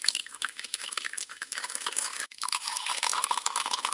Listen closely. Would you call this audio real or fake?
fake